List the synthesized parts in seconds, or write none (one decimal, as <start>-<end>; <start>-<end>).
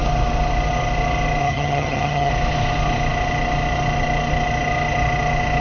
1.4-2.3